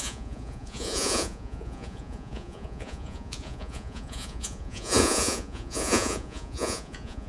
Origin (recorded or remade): remade